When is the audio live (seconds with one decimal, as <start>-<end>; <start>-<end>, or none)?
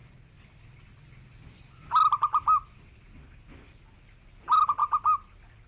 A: 0.0-5.7